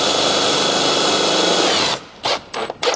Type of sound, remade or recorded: recorded